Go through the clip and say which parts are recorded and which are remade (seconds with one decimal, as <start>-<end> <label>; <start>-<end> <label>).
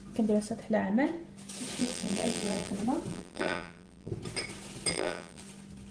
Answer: 0.0-1.8 recorded; 1.8-2.7 remade; 2.7-3.1 recorded; 3.1-4.1 remade; 4.1-4.9 recorded; 4.9-5.4 remade; 5.4-5.9 recorded